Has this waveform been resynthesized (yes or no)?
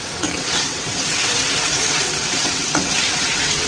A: yes